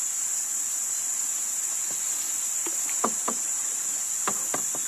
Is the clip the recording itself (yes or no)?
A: yes